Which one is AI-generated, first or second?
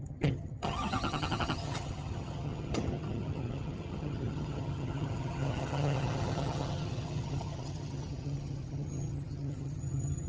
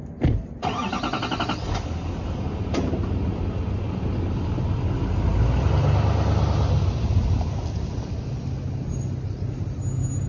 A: first